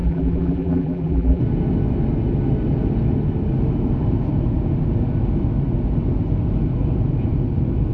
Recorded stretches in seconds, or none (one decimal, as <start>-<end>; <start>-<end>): 1.4-7.9